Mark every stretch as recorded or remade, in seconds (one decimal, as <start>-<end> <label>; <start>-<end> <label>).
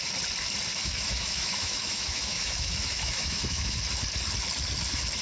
0.0-0.7 recorded; 0.7-3.8 remade; 3.8-5.2 recorded